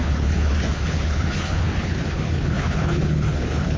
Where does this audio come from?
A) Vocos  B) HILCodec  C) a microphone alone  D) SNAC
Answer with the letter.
B